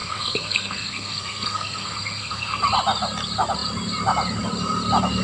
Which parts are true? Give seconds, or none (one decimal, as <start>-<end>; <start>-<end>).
2.6-5.2